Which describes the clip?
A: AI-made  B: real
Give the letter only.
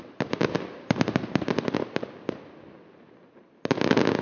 B